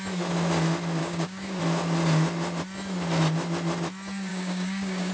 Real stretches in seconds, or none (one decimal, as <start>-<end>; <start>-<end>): 0.0-1.0; 1.6-4.3